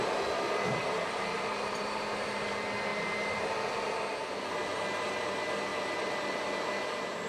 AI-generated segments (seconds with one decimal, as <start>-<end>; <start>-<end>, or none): 0.8-2.5; 2.9-3.4; 5.7-6.2

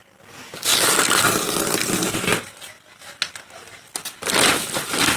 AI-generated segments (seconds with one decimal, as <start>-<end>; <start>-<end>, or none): none

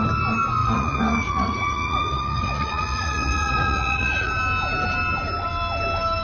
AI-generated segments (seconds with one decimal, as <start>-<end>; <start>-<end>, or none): 0.6-4.3

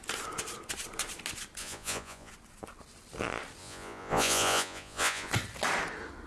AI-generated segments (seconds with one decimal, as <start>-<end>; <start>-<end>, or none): 1.6-2.3; 3.6-5.3

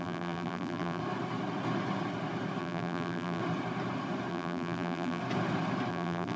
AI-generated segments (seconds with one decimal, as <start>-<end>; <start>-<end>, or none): 0.0-1.0; 2.6-3.4; 4.3-5.2; 5.9-6.4